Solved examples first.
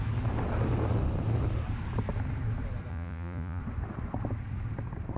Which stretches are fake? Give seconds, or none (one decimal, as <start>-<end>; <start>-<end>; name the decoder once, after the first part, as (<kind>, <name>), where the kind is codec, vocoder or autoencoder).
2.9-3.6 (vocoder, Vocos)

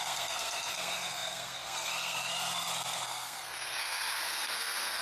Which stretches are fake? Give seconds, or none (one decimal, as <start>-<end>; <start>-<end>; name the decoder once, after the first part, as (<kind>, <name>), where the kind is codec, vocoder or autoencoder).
0.0-5.0 (codec, SNAC)

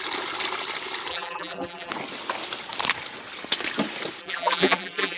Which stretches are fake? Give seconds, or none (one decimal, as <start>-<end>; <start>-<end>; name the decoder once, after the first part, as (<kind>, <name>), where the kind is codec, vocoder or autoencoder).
1.1-1.9 (vocoder, BigVGAN v2); 4.2-5.2